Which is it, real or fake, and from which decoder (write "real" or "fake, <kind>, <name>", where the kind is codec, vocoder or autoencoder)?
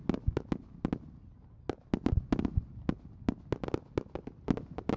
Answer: real